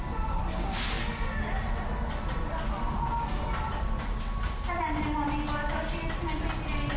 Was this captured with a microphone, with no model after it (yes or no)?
yes